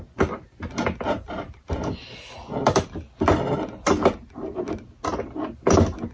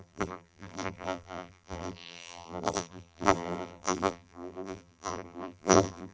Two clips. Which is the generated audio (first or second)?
second